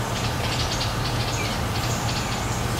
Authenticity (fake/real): real